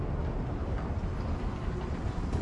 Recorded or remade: recorded